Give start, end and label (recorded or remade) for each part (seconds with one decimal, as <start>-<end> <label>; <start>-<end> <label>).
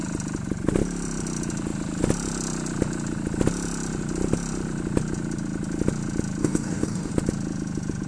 0.0-6.4 recorded; 6.4-7.1 remade; 7.1-8.1 recorded